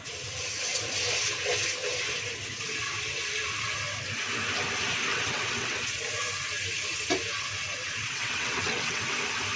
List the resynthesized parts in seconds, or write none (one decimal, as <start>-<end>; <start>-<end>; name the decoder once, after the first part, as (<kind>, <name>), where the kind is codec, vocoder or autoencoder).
5.1-6.0 (vocoder, WaveNeXt); 8.0-9.0